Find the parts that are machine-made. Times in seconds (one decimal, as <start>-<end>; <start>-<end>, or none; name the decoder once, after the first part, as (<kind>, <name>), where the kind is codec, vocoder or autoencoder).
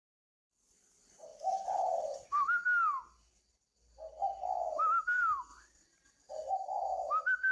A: none